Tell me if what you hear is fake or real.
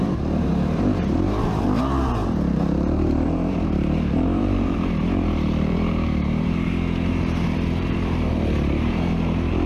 fake